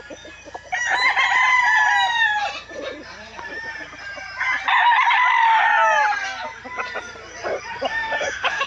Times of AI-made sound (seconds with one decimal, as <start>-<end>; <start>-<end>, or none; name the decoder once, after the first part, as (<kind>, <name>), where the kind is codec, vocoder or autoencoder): 7.9-8.7 (autoencoder, DAC-VAE)